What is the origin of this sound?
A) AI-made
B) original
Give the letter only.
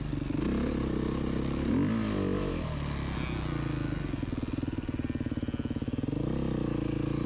B